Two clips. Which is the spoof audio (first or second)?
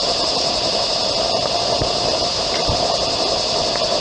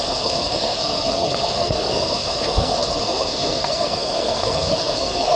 second